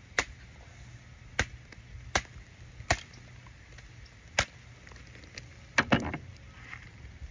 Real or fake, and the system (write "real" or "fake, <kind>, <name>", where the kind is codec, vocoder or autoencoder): real